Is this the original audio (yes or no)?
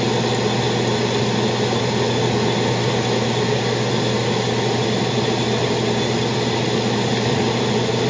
yes